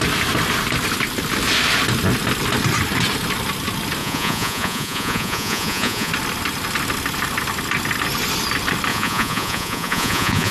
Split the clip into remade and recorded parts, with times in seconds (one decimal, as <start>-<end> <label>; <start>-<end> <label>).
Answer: 0.0-4.0 recorded; 4.0-6.1 remade; 6.1-8.9 recorded; 8.9-10.5 remade